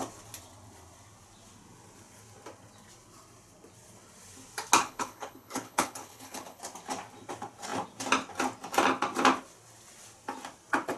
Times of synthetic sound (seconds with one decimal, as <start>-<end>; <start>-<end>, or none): 4.8-6.6